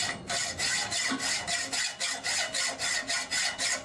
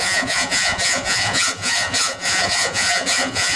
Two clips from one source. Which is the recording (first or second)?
first